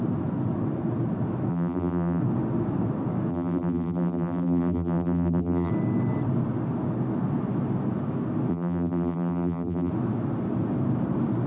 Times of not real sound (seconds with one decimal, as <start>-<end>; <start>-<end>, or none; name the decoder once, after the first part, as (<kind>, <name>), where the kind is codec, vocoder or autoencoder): 1.5-2.2 (vocoder, BigVGAN v2); 3.3-5.7; 8.5-9.9